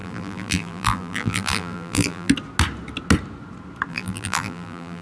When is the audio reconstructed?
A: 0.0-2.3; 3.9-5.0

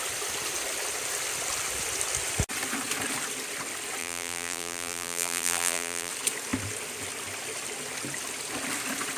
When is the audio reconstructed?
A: 4.0-6.1

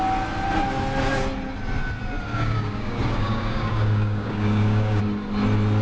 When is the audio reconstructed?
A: 2.3-5.0

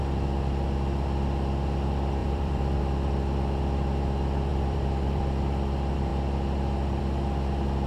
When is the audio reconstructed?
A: 2.2-2.8; 4.5-5.2

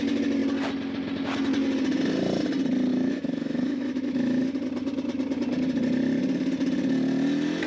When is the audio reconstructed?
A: 2.9-4.4

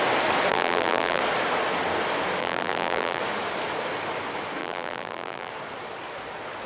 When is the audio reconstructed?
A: 0.5-1.2; 2.4-3.2; 4.6-5.5

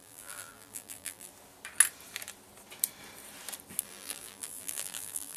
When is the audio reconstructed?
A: 0.0-1.3; 3.8-5.4

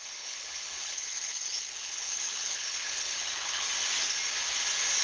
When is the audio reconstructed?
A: 0.0-3.7